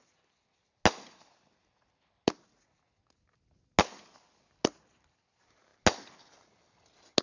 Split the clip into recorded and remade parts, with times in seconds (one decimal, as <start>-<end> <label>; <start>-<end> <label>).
0.0-7.2 recorded